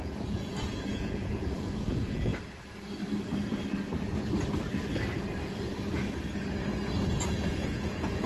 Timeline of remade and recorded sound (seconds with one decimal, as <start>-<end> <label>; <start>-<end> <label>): 0.0-2.3 remade; 2.3-7.1 recorded; 7.1-8.3 remade